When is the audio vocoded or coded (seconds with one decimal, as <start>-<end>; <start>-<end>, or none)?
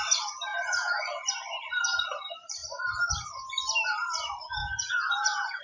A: 0.5-1.0; 4.6-5.6